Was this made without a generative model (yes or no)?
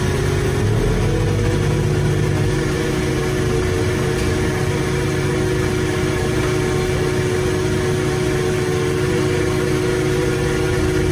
yes